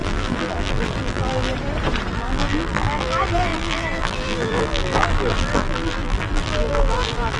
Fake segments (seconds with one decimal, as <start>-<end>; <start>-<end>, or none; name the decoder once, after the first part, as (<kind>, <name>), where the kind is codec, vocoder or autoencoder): 0.0-1.5 (vocoder, BigVGAN v2); 2.1-7.4